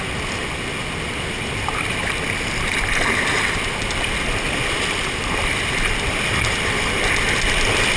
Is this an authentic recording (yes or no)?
yes